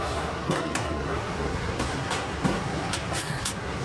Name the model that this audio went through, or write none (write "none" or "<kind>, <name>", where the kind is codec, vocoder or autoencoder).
codec, SNAC